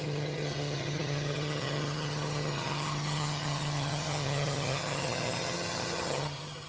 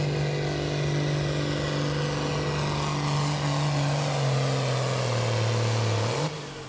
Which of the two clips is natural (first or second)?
second